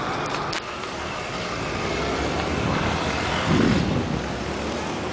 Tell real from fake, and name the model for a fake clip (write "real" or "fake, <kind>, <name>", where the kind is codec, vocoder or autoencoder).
real